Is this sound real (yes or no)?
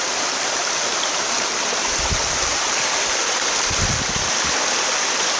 yes